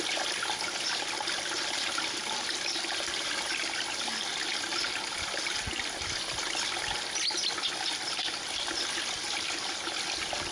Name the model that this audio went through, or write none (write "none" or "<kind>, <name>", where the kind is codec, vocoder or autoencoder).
none